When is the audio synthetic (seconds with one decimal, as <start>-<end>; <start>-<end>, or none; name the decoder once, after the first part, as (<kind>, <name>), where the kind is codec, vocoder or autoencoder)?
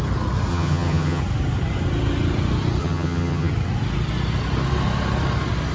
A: 0.5-1.2 (vocoder, HiFi-GAN); 2.8-3.5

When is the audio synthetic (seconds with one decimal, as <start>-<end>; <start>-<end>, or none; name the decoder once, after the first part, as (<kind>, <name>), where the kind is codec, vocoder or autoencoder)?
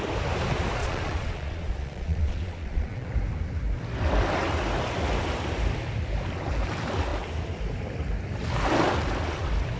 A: 0.8-3.1 (vocoder, Vocos)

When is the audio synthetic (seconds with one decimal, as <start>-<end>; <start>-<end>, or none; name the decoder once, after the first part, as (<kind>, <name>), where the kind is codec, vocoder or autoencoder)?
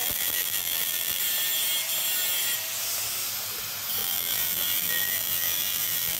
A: 0.0-1.2 (vocoder, BigVGAN v2); 4.0-6.2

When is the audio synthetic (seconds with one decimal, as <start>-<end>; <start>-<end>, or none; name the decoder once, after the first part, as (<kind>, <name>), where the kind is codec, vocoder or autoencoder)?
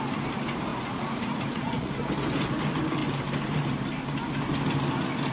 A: 0.7-1.9 (vocoder, Vocos)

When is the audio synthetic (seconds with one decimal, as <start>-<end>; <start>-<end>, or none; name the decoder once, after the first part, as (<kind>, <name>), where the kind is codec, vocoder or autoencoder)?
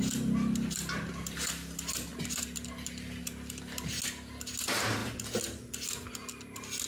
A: none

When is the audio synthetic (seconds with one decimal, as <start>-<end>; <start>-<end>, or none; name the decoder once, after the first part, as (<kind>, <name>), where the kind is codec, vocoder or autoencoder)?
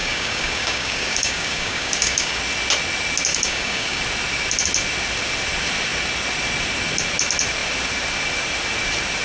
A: 0.0-2.4 (codec, DAC); 3.3-4.0